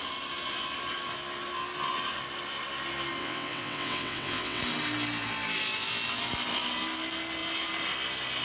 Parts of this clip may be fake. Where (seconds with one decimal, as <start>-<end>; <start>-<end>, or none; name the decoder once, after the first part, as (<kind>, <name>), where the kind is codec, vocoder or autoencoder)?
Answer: 3.2-4.6 (vocoder, WaveNeXt)